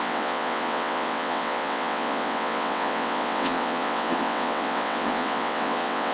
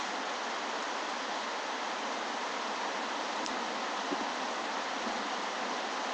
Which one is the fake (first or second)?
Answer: first